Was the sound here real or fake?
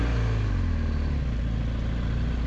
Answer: real